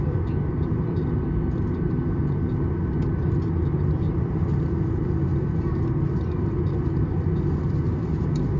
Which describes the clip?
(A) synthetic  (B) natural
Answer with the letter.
B